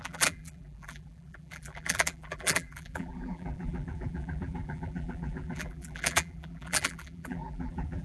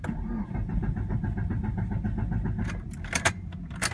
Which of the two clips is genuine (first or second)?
second